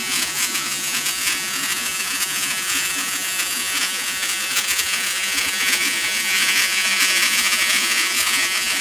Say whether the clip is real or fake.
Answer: fake